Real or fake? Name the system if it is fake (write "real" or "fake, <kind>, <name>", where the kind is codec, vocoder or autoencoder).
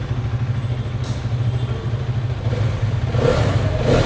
real